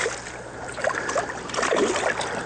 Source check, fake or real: real